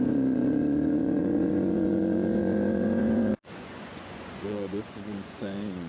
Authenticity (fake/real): fake